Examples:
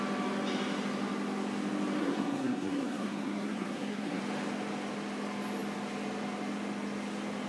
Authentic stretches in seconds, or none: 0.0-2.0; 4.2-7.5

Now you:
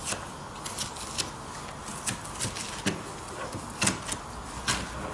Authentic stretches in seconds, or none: 0.0-5.1